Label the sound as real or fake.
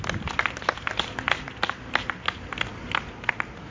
real